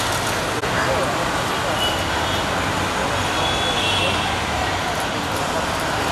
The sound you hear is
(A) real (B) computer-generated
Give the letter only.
A